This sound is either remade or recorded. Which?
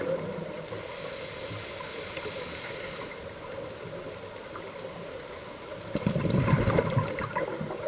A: recorded